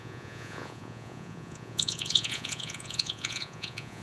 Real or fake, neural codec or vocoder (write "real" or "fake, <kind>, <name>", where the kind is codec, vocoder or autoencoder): fake, vocoder, Vocos